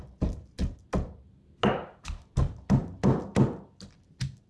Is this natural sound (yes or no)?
yes